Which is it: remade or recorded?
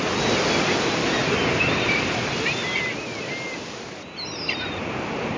recorded